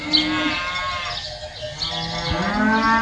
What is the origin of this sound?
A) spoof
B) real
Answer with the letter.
B